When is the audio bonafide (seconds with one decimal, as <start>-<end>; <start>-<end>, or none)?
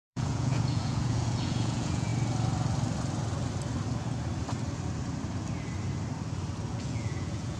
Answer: 2.1-6.7